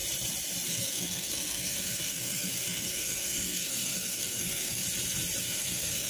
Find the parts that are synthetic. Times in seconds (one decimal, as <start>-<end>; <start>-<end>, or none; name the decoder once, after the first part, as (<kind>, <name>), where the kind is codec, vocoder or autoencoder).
0.7-4.8 (codec, SNAC); 5.4-6.1